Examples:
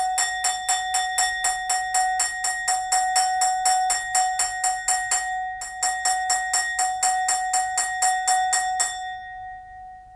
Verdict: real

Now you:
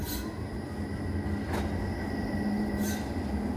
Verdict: real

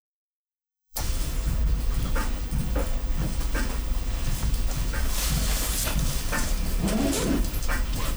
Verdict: fake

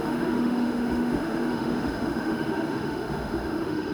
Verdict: fake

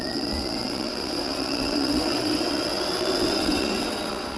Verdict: fake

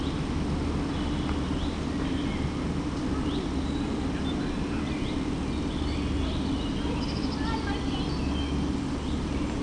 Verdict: real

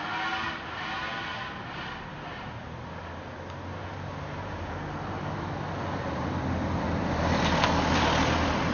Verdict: real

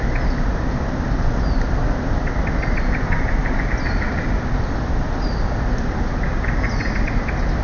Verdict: real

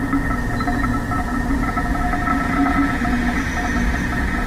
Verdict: real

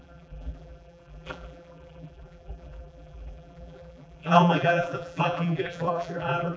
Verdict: fake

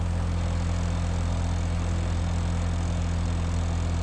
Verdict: real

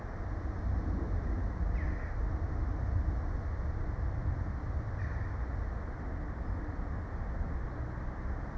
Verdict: real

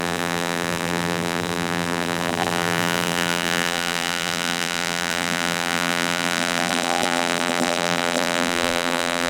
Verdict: fake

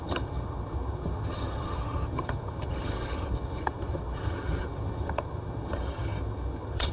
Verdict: fake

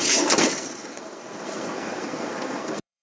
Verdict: fake